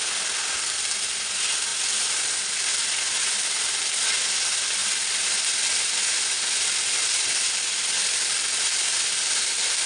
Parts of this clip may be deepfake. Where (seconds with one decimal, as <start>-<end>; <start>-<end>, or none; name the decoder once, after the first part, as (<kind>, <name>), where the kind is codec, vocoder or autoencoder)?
none